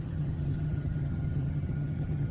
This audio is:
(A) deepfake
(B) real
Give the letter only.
A